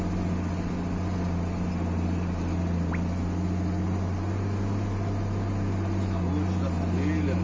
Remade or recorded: recorded